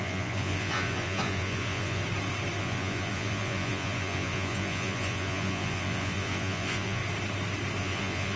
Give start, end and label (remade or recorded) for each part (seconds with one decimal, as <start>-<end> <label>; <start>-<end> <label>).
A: 0.0-2.0 remade; 2.0-2.6 recorded; 2.6-7.0 remade; 7.0-7.8 recorded; 7.8-8.4 remade

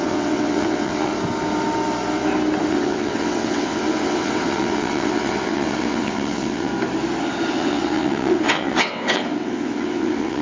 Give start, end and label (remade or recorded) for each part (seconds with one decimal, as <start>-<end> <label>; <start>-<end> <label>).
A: 0.0-1.1 remade; 1.1-2.6 recorded; 2.6-6.7 remade; 6.7-7.5 recorded; 7.5-10.4 remade

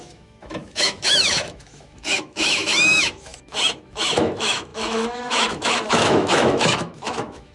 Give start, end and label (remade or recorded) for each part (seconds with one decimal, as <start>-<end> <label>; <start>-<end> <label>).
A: 0.0-7.5 remade

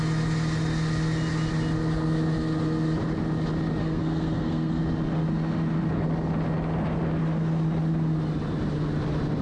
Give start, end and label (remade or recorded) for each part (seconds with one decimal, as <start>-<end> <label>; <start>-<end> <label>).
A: 0.0-3.8 recorded; 3.8-4.8 remade; 4.8-9.4 recorded

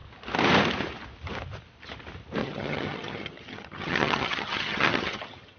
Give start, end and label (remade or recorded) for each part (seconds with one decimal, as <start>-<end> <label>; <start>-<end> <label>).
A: 0.0-2.4 recorded; 2.4-5.6 remade